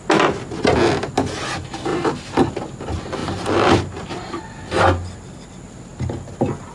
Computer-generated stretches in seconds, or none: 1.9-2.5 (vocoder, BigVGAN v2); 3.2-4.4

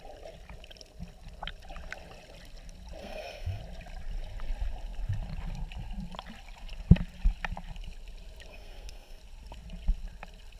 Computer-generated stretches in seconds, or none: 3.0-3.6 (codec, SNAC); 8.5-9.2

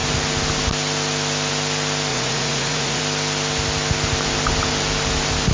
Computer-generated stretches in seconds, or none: 2.1-3.0 (vocoder, Vocos)

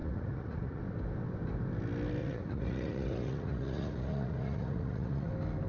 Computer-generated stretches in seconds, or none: 0.0-0.8 (vocoder, Vocos); 2.2-5.3

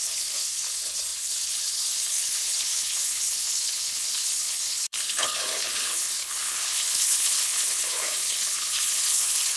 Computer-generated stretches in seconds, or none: 0.0-9.6 (codec, HILCodec)

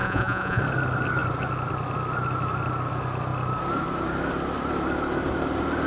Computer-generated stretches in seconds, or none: 0.0-0.6 (vocoder, Vocos)

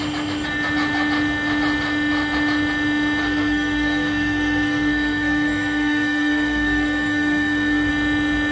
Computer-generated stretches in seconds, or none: 3.2-7.9 (codec, SNAC)